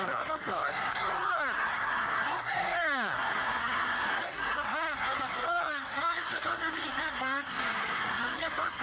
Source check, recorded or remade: remade